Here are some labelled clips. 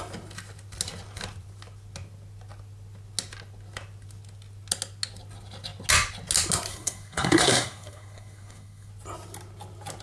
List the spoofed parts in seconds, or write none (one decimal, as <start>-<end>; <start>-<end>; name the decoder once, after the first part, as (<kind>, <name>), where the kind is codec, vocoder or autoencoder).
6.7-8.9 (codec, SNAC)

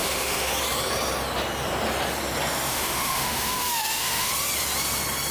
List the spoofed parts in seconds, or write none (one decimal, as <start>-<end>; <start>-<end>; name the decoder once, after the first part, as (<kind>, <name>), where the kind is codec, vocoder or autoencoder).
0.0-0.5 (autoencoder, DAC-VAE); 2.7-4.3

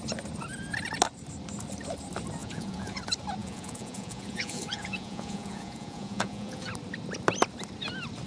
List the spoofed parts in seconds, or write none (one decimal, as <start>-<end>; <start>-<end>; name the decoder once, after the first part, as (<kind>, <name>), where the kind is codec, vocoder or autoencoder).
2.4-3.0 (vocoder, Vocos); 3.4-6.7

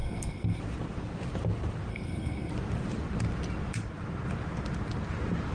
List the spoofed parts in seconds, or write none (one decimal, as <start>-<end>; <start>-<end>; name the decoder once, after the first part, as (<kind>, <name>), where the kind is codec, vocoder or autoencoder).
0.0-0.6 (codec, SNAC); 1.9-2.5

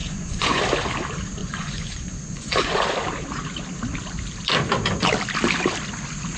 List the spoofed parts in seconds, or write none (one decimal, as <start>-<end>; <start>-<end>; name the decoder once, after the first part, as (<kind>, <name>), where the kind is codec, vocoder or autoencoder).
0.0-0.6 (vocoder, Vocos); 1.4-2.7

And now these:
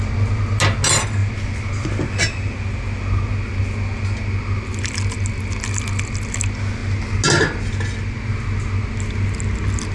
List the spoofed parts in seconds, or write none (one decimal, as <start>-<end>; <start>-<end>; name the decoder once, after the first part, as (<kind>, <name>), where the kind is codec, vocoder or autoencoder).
none

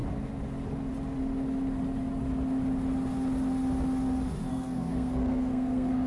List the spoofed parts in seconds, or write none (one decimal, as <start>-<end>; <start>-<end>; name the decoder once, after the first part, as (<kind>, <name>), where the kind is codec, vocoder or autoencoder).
4.5-6.1 (codec, SNAC)